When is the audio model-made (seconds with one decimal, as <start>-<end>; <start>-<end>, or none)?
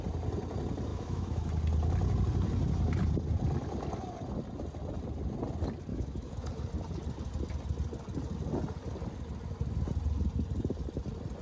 0.9-1.5; 5.9-6.5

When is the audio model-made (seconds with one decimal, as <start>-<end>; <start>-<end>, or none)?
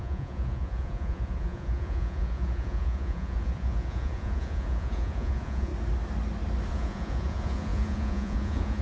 0.0-5.7; 6.7-8.8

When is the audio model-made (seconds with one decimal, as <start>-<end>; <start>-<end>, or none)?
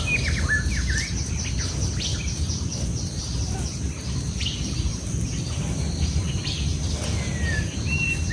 2.1-3.2; 4.9-6.2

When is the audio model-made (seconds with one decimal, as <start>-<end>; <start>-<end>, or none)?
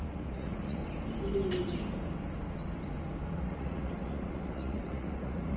0.0-0.8; 3.3-5.6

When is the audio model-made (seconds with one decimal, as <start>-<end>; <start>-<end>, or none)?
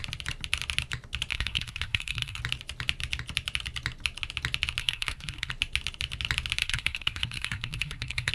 1.3-2.4; 4.8-5.5; 6.6-8.3